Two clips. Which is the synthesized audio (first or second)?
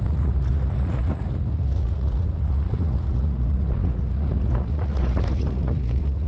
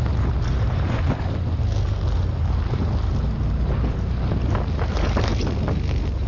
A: first